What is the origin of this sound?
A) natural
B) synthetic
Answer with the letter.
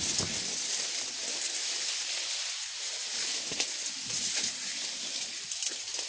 A